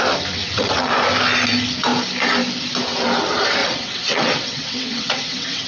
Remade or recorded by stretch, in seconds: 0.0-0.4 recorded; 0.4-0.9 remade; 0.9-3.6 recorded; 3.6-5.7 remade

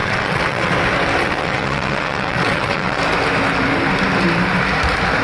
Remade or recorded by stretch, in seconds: 0.0-0.7 remade; 0.7-1.2 recorded; 1.2-3.0 remade; 3.0-5.2 recorded

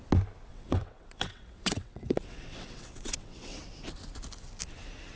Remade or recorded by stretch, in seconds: 0.0-0.5 recorded; 0.5-3.6 remade; 3.6-5.2 recorded

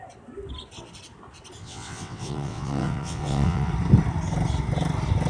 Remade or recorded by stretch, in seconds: 0.0-1.6 recorded; 1.6-3.7 remade; 3.7-5.3 recorded

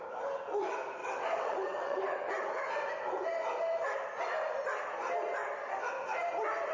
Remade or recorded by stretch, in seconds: 0.0-1.0 recorded; 1.0-2.3 remade; 2.3-6.7 recorded

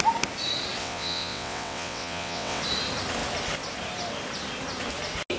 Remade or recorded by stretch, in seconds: 0.0-0.8 recorded; 0.8-2.6 remade; 2.6-5.4 recorded

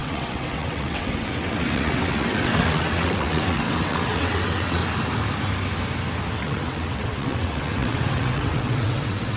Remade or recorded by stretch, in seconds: 0.0-4.8 remade; 4.8-6.3 recorded; 6.3-9.4 remade